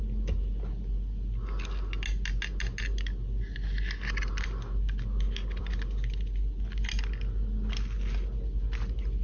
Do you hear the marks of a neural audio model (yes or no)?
no